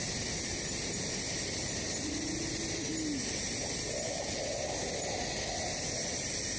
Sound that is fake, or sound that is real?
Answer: real